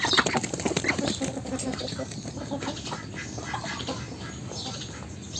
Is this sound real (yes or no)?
yes